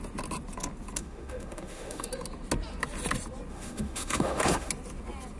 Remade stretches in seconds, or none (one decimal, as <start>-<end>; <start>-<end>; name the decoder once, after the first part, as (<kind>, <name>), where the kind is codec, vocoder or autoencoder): 1.0-2.1 (autoencoder, DAC-VAE); 3.5-4.7